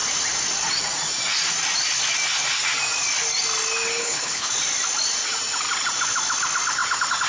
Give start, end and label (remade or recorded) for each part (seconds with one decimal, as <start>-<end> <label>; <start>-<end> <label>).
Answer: 0.0-4.0 recorded; 4.0-4.5 remade; 4.5-7.3 recorded